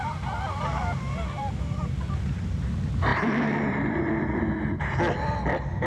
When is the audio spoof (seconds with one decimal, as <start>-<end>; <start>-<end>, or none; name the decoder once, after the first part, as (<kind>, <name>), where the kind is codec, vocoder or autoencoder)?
3.1-4.1 (vocoder, BigVGAN v2)

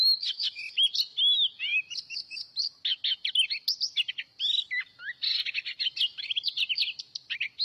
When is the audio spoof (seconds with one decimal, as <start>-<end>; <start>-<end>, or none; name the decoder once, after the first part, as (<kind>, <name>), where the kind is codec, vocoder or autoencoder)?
none